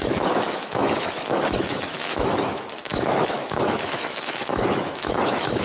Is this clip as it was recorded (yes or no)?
no